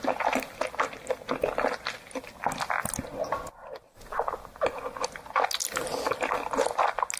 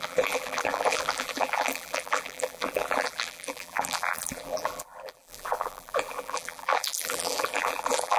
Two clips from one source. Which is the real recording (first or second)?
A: first